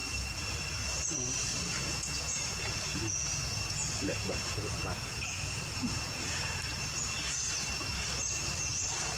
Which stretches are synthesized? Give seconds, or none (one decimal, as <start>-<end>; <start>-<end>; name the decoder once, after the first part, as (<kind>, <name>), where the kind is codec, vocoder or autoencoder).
1.8-6.6 (vocoder, Vocos)